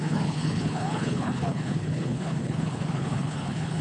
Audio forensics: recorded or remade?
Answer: remade